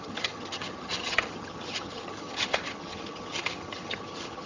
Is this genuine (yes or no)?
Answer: no